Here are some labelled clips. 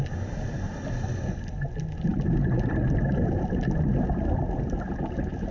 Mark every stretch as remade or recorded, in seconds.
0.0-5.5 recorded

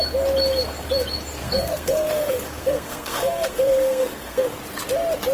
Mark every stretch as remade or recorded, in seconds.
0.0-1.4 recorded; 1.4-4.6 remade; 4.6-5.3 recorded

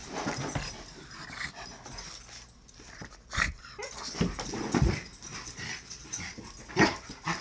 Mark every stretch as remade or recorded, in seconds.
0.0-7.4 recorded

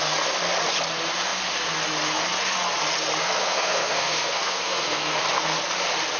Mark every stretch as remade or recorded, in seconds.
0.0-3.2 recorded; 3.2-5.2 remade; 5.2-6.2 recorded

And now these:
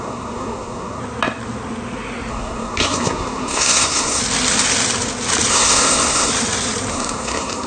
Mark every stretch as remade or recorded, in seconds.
0.0-1.0 remade; 1.0-2.3 recorded; 2.3-4.2 remade; 4.2-5.5 recorded; 5.5-6.3 remade; 6.3-6.9 recorded; 6.9-7.7 remade

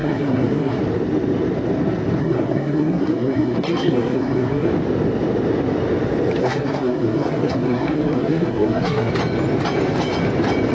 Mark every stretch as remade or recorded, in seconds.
0.0-0.8 remade; 0.8-2.2 recorded; 2.2-4.7 remade; 4.7-6.4 recorded; 6.4-9.1 remade; 9.1-10.7 recorded